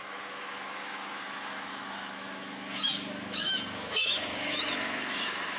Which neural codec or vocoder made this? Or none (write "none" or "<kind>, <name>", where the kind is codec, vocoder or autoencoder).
autoencoder, DAC-VAE